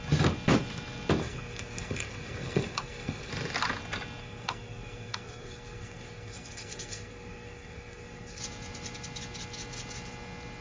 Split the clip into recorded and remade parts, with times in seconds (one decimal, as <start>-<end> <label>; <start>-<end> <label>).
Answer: 0.0-1.2 recorded; 1.2-3.3 remade; 3.3-4.2 recorded; 4.2-8.4 remade; 8.4-10.6 recorded